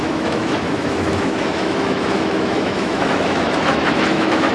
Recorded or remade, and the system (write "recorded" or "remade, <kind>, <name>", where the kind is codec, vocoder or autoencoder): remade, autoencoder, DAC-VAE